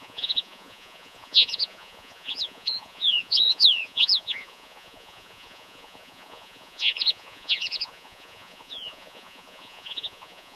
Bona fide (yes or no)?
no